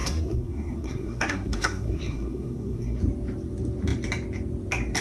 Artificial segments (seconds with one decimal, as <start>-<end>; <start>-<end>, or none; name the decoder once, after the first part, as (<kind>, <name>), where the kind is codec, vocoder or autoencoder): 0.0-3.0 (codec, SNAC)